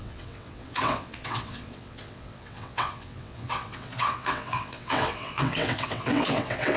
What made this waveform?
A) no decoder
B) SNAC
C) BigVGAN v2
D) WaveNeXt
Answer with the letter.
D